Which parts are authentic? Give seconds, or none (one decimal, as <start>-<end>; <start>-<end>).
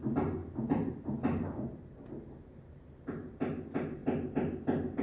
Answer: 0.0-0.4; 3.4-5.0